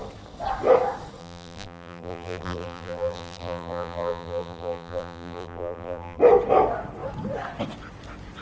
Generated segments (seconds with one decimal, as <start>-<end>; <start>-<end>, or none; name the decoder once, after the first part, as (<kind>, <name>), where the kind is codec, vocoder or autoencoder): 1.2-6.2 (vocoder, BigVGAN v2)

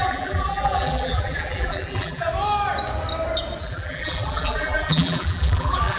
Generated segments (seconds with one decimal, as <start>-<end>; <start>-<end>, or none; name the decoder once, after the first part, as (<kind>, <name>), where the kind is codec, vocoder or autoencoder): 0.0-2.3 (vocoder, BigVGAN v2); 3.6-6.0